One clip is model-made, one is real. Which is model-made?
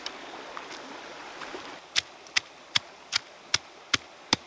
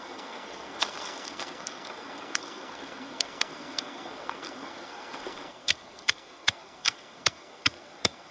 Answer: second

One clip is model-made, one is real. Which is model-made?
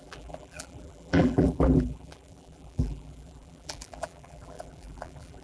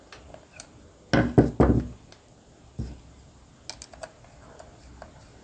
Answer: first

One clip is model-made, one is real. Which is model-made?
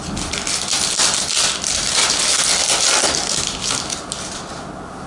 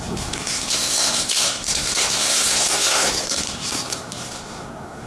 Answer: second